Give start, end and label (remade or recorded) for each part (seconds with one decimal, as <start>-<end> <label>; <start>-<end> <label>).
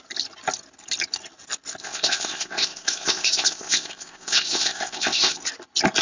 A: 0.0-1.8 recorded; 1.8-5.4 remade; 5.4-6.0 recorded